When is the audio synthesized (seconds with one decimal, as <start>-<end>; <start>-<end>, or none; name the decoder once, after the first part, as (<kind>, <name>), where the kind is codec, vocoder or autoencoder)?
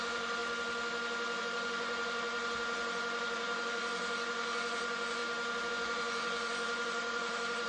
0.0-0.4 (vocoder, Vocos); 1.4-5.2; 5.7-7.7